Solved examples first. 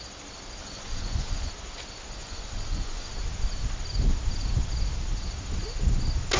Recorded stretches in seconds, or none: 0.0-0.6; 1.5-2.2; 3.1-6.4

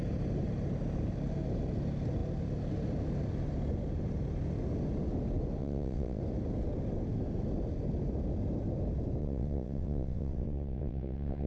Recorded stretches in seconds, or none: 0.0-5.6; 6.2-9.2

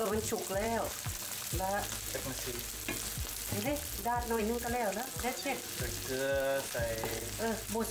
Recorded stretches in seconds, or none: 2.7-7.9

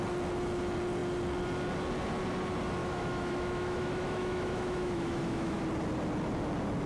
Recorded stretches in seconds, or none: 0.0-2.8; 5.6-6.9

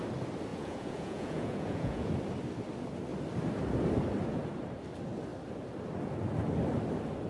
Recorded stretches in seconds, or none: 0.0-0.5; 2.1-7.3

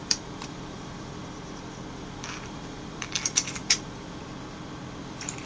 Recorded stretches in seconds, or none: 1.2-1.9; 4.2-5.0